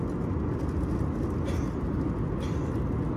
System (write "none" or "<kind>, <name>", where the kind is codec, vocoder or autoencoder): none